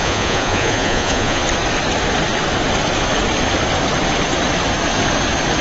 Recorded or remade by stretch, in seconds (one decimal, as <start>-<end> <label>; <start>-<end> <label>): 0.0-1.4 remade; 1.4-5.6 recorded